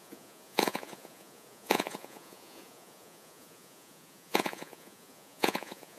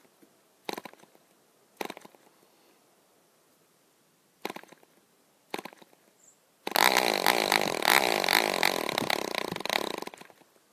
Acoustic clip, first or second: second